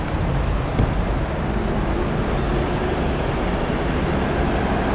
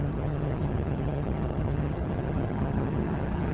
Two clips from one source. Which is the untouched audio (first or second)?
first